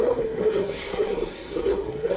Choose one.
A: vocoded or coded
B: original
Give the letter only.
A